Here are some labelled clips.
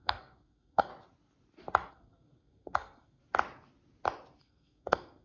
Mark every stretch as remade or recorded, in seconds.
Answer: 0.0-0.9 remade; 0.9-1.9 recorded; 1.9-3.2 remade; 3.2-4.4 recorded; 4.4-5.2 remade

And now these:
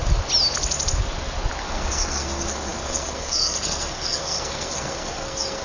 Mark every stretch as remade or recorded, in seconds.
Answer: 0.0-1.6 recorded; 1.6-5.6 remade

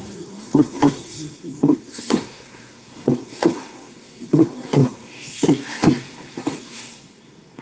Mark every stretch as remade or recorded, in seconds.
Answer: 0.0-7.6 remade